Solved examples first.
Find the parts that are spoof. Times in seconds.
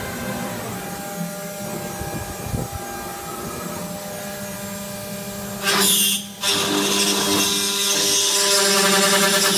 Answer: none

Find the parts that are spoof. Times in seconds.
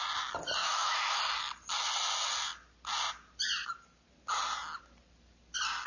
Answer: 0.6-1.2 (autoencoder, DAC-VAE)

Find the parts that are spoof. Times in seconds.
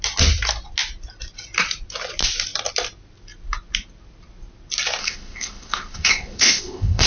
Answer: 5.0-7.1 (codec, ZipCodec)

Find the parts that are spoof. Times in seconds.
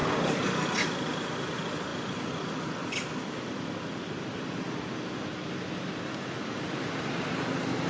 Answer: none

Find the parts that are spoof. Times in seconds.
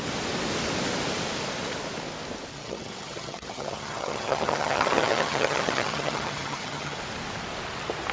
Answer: 2.5-7.0 (vocoder, HiFi-GAN)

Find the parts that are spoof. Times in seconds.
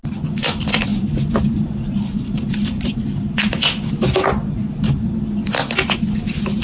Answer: 0.9-4.9 (vocoder, BigVGAN v2)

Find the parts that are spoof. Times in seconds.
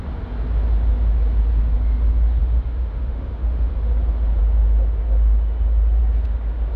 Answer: 2.4-3.7 (autoencoder, DAC-VAE)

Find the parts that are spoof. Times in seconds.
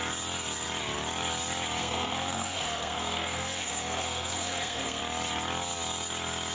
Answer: 1.8-5.0 (codec, SNAC)